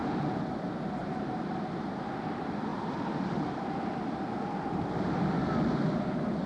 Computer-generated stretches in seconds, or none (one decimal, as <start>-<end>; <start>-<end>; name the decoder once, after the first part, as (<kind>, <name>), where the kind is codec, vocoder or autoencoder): 1.0-1.5 (vocoder, BigVGAN v2); 2.7-3.9